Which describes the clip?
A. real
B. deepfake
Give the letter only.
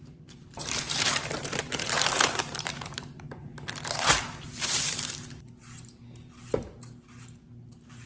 B